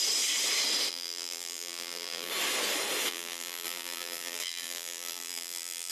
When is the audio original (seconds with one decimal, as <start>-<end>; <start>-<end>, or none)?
0.0-0.9; 2.3-3.1